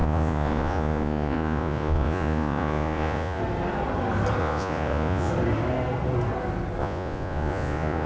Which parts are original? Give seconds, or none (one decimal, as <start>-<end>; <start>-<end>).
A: 3.4-4.4; 5.3-6.8